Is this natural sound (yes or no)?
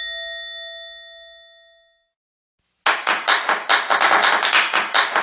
yes